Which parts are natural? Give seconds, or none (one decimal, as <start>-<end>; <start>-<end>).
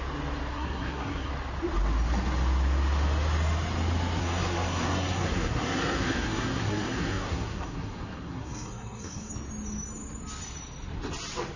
0.0-0.5; 1.3-4.2; 9.3-11.6